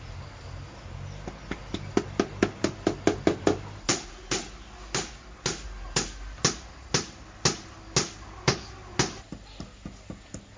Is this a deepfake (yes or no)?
no